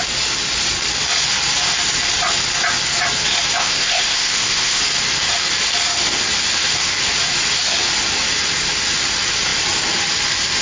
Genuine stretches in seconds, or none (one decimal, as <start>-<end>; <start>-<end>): 0.0-3.6; 4.8-10.6